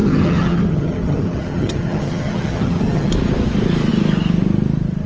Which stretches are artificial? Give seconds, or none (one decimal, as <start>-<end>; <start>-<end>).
0.0-3.1